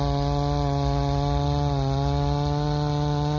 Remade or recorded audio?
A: recorded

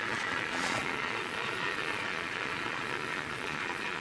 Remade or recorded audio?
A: remade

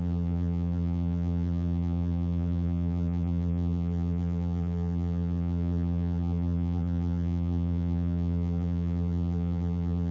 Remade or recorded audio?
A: remade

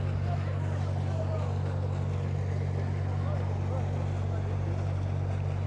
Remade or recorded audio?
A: recorded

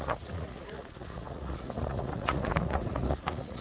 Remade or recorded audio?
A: remade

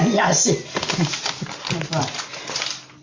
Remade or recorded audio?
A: recorded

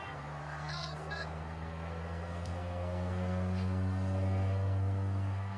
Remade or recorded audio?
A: remade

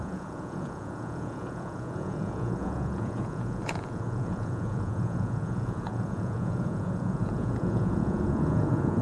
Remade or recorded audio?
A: remade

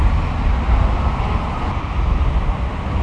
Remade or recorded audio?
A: recorded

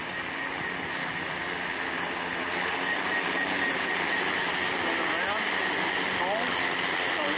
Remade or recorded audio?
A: recorded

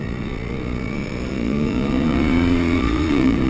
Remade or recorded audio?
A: remade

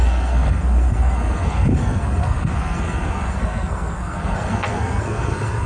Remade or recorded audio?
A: remade